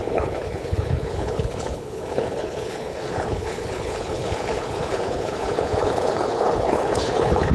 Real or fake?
fake